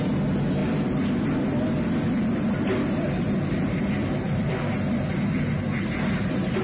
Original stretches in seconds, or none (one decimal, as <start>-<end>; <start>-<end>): 0.0-6.6